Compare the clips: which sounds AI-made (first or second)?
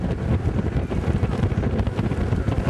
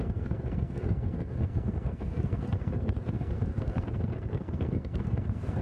second